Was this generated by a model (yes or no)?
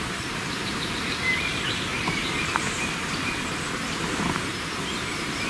yes